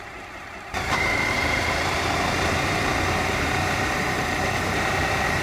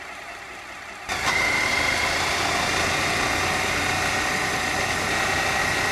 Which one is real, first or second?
second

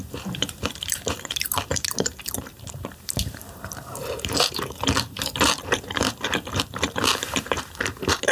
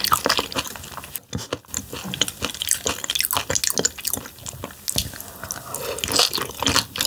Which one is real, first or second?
second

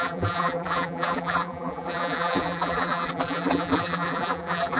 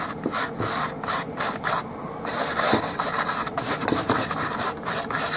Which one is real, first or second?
second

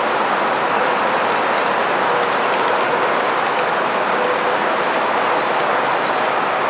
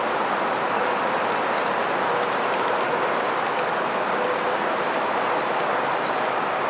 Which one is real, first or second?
first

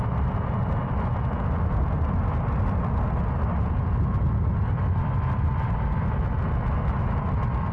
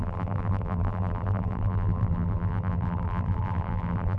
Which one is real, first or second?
first